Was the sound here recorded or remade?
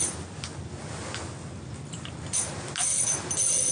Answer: recorded